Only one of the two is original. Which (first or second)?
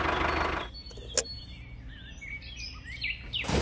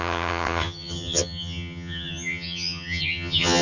first